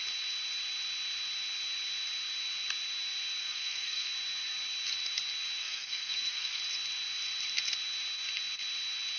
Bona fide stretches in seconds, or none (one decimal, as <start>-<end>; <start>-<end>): 0.0-3.4; 4.1-5.6; 6.6-9.2

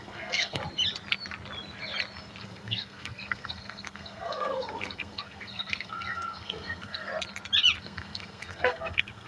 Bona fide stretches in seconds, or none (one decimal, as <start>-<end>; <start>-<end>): 0.6-2.4; 7.1-7.8

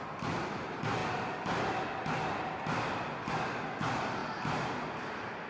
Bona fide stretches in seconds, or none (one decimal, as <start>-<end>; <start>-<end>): 0.0-5.5